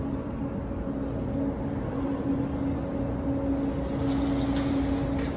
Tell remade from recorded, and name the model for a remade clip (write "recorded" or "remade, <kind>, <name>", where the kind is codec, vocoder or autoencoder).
recorded